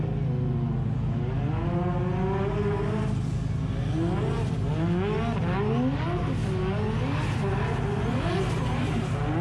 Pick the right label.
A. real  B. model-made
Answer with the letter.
A